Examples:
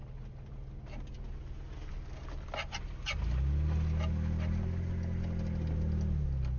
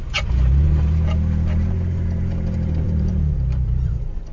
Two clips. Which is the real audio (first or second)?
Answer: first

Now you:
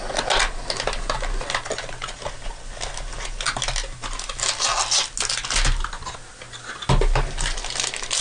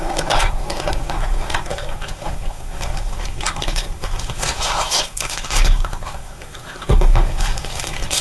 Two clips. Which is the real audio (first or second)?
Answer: first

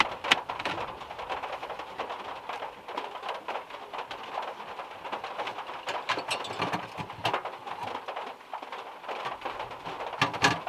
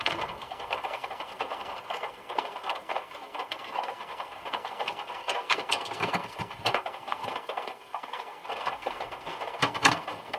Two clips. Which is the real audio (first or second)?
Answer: first